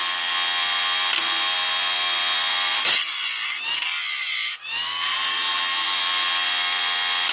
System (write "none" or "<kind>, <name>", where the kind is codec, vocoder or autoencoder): vocoder, BigVGAN v2